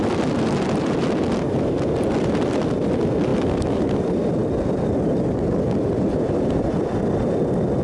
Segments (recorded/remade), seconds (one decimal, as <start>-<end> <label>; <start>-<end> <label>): 0.0-7.8 recorded